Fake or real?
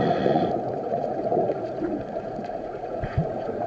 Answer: fake